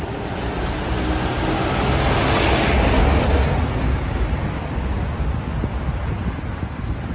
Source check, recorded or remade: recorded